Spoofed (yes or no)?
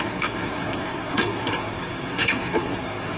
yes